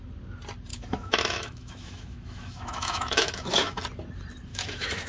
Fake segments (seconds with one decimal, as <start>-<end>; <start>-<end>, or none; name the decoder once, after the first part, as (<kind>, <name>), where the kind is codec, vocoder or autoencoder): 0.7-3.8 (autoencoder, DAC-VAE); 4.5-5.1